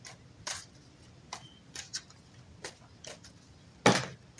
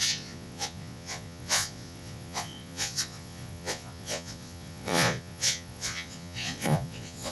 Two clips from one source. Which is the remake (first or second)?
second